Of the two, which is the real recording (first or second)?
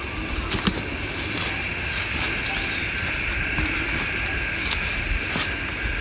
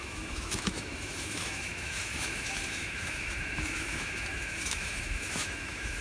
first